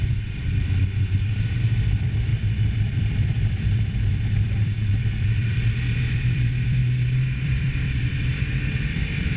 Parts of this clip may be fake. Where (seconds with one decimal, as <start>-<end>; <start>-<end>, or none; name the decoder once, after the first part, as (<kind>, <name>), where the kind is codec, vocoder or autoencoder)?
0.0-6.8 (vocoder, BigVGAN v2); 7.4-9.4